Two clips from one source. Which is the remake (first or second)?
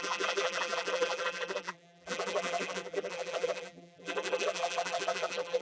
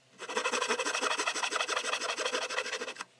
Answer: first